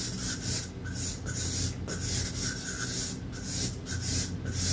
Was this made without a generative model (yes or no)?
yes